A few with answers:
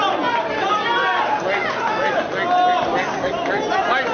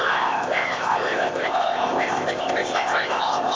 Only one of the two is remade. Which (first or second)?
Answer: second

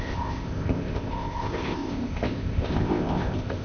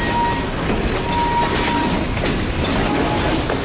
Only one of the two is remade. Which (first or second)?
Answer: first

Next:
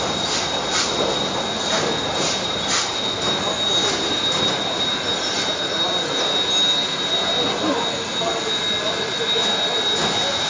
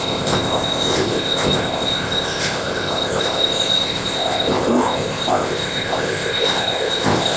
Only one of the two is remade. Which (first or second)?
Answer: second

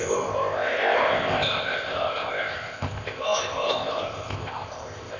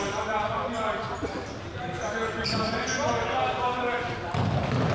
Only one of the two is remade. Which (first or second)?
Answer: first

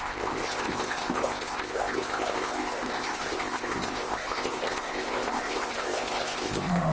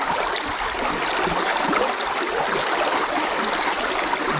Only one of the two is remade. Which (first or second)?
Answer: first